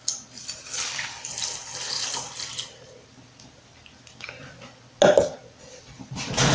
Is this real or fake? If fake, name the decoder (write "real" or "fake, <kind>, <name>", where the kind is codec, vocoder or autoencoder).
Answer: real